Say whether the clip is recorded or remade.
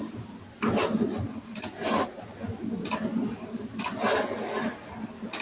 recorded